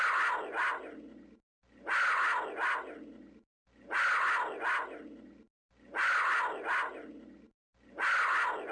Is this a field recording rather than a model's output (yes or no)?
yes